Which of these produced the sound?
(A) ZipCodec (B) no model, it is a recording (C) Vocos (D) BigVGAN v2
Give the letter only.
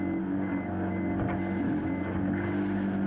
B